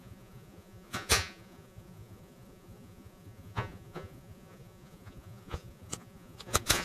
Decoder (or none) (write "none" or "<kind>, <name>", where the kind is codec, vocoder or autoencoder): vocoder, Vocos